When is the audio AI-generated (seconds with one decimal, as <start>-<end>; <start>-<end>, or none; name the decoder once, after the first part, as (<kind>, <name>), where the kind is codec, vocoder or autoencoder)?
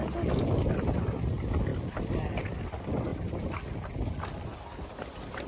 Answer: none